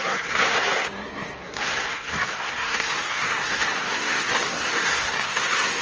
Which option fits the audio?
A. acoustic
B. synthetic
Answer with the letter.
B